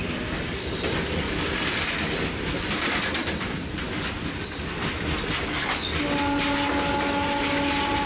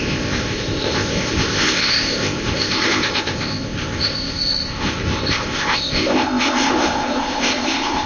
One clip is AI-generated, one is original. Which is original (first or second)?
first